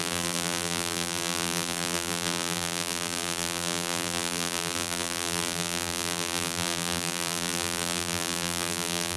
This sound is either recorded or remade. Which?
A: remade